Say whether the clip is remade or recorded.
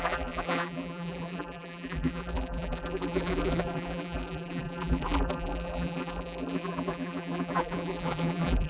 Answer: remade